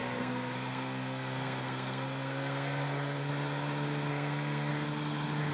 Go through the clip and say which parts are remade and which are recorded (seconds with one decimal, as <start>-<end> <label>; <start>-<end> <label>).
0.0-3.3 remade; 3.3-4.1 recorded; 4.1-4.7 remade; 4.7-5.5 recorded